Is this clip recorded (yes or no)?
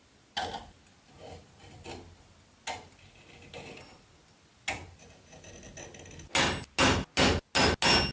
yes